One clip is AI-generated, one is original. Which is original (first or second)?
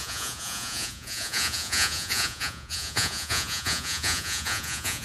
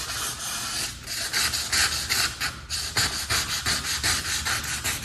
second